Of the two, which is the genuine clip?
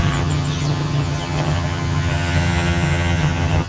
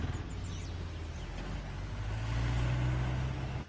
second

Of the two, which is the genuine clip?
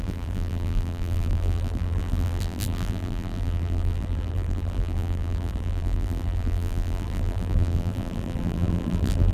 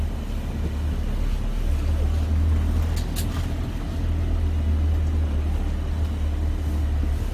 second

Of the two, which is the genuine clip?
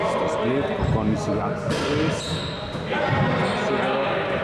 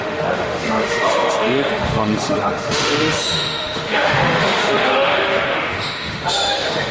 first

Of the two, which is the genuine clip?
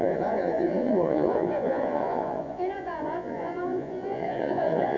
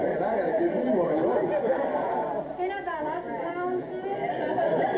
second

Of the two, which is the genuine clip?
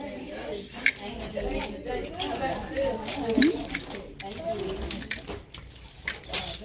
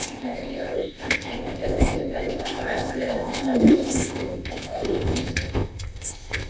first